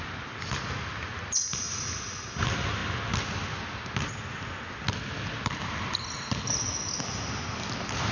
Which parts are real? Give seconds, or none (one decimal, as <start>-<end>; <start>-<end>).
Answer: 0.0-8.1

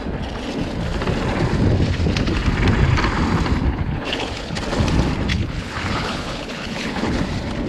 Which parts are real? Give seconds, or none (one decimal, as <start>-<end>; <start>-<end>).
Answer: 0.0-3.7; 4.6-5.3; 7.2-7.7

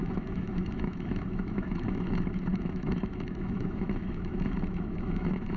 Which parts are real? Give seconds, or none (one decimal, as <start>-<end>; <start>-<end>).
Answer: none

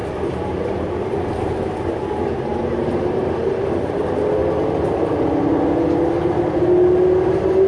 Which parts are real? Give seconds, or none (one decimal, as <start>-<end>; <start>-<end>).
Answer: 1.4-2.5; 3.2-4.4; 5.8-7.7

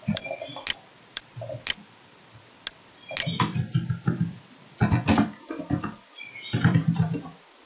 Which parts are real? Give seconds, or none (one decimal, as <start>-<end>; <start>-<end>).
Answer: 0.0-3.4

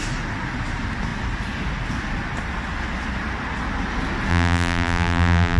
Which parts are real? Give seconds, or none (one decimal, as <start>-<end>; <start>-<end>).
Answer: 0.0-4.3